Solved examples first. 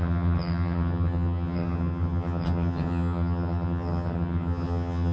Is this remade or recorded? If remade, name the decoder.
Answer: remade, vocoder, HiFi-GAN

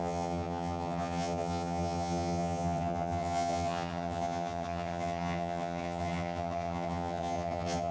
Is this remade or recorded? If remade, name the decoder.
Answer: remade, vocoder, HiFi-GAN